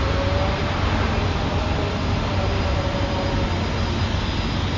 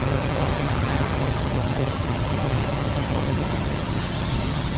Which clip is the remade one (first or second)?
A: second